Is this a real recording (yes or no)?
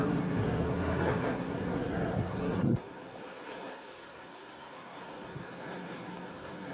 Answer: no